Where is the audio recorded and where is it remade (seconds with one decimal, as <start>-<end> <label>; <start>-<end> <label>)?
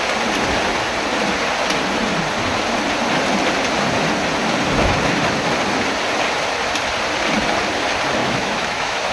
0.0-8.2 recorded; 8.2-9.1 remade